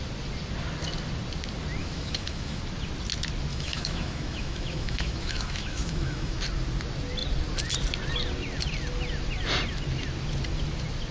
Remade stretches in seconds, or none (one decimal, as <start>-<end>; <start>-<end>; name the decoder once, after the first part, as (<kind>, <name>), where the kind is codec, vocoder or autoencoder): 1.8-2.6 (autoencoder, DAC-VAE); 3.5-6.4